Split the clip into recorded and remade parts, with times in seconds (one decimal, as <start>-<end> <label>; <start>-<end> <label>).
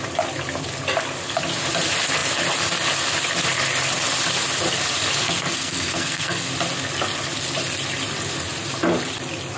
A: 0.0-5.2 recorded; 5.2-6.5 remade; 6.5-9.6 recorded